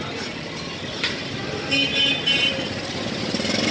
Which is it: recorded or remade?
recorded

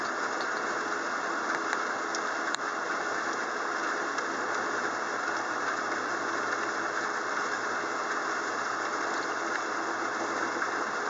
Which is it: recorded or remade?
recorded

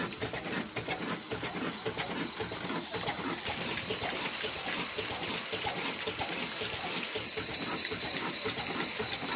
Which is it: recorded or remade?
recorded